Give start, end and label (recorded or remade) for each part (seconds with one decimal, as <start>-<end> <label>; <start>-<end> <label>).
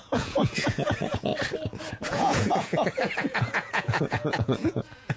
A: 0.0-1.3 remade; 1.3-1.9 recorded; 1.9-5.2 remade